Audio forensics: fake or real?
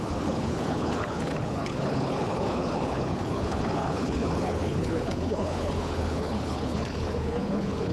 fake